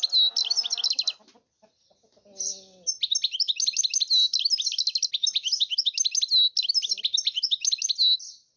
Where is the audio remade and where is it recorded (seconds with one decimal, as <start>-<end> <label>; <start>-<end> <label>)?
0.0-8.6 recorded

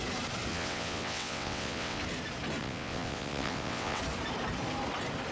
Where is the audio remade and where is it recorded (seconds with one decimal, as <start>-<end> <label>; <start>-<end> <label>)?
0.0-0.5 recorded; 0.5-2.0 remade; 2.0-2.6 recorded; 2.6-4.0 remade; 4.0-5.3 recorded

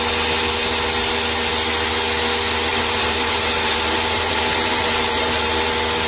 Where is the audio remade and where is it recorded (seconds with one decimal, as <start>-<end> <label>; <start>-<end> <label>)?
0.0-2.7 recorded; 2.7-5.5 remade; 5.5-6.1 recorded

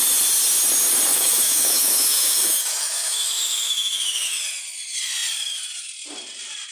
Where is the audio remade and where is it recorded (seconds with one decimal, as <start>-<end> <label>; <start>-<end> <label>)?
0.0-1.1 recorded; 1.1-4.4 remade; 4.4-6.7 recorded

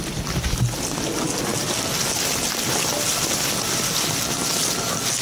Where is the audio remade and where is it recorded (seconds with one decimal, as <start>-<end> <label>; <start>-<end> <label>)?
0.0-5.2 recorded

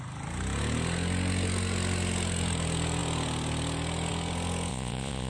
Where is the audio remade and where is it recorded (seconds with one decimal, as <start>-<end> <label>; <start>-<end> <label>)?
0.0-4.7 recorded; 4.7-5.3 remade

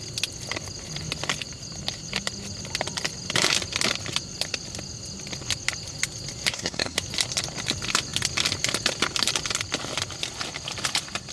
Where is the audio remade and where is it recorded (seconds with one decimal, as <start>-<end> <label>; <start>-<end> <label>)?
0.0-6.5 recorded; 6.5-7.0 remade; 7.0-11.3 recorded